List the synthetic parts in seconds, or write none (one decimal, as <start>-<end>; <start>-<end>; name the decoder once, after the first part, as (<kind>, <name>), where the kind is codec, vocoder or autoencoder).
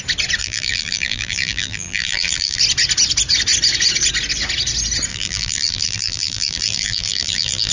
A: 0.4-2.6 (vocoder, BigVGAN v2); 5.1-7.7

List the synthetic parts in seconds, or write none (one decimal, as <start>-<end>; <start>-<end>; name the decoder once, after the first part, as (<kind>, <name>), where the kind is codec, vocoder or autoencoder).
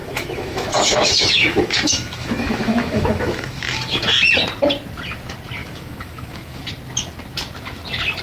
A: 0.0-4.2 (autoencoder, DAC-VAE); 5.6-6.6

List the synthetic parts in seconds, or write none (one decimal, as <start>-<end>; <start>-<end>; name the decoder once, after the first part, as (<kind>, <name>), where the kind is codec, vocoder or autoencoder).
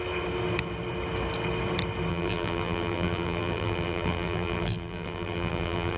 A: 2.1-6.0 (vocoder, BigVGAN v2)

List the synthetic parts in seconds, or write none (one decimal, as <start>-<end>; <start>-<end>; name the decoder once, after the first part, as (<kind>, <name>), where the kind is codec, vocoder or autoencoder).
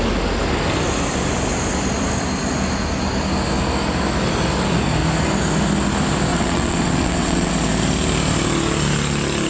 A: 6.3-7.5 (vocoder, WaveNeXt)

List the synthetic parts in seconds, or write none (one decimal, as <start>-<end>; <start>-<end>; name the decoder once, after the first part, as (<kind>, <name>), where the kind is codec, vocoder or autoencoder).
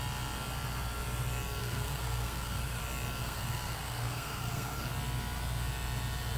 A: 1.6-2.8 (codec, SNAC); 3.2-4.9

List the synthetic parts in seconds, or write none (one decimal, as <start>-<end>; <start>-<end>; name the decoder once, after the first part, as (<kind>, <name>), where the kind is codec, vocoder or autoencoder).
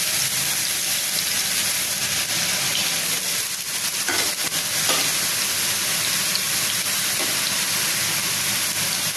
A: none